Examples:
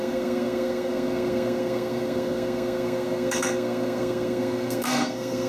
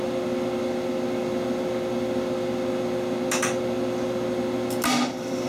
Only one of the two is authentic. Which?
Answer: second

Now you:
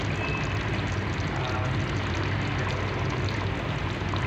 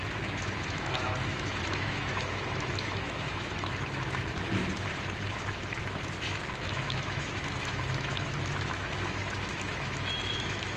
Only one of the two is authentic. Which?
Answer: first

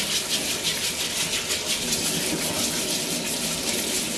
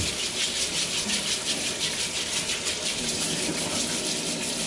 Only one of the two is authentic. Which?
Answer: first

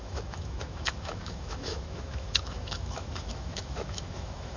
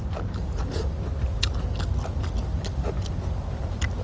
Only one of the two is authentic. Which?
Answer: second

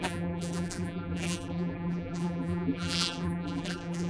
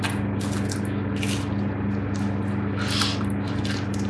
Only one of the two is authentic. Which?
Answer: second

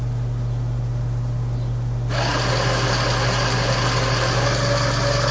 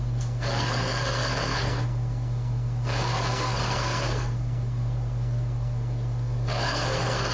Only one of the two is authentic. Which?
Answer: first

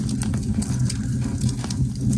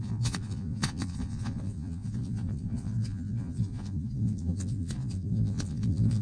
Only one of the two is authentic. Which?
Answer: first